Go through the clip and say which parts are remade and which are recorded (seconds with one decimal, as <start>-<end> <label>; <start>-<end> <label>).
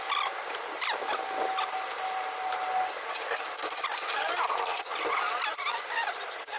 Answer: 0.0-6.6 recorded